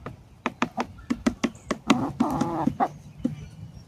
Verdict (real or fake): real